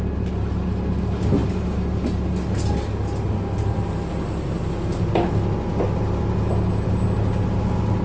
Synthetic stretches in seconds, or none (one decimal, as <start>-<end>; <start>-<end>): none